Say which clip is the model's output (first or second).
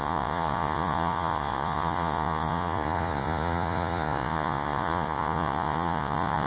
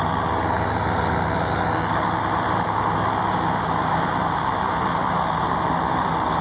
first